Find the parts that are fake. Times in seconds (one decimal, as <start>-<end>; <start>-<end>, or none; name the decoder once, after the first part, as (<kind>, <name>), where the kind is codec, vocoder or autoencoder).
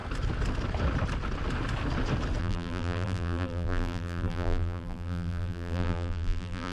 2.4-6.7 (vocoder, BigVGAN v2)